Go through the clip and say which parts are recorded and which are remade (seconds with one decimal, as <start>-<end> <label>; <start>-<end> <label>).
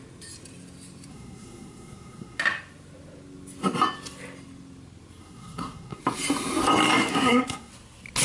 0.0-1.1 recorded; 1.1-2.4 remade; 2.4-5.2 recorded; 5.2-6.0 remade; 6.0-7.1 recorded; 7.1-7.7 remade; 7.7-8.2 recorded